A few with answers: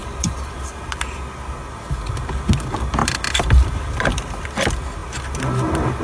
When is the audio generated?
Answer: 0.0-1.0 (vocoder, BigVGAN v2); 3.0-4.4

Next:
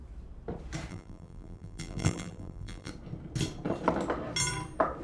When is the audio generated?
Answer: 0.9-2.9 (vocoder, BigVGAN v2)

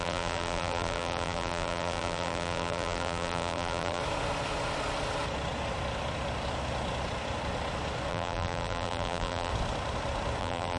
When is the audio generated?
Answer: 0.0-4.0 (vocoder, BigVGAN v2); 8.1-9.5; 10.4-10.8

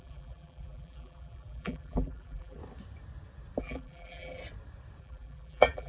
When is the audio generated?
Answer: 0.0-2.6 (vocoder, BigVGAN v2); 3.6-4.4; 5.0-5.9

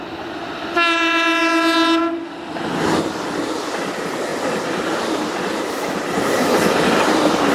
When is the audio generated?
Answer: 4.3-6.9 (vocoder, BigVGAN v2)